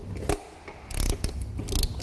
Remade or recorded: recorded